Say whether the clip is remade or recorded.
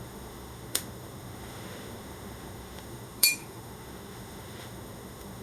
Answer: remade